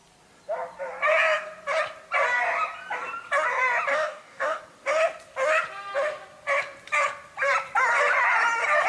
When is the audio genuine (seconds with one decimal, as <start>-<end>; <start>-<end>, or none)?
0.0-3.9; 4.6-8.9